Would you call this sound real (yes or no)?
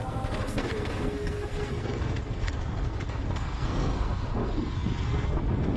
no